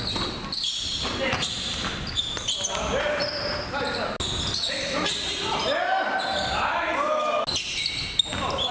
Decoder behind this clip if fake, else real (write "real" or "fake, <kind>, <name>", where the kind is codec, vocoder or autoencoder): real